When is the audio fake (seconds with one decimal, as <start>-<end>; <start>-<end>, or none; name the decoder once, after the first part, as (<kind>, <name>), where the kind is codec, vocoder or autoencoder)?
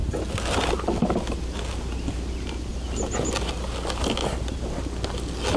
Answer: none